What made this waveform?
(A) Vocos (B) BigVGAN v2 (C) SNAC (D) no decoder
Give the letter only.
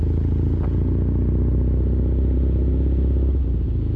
D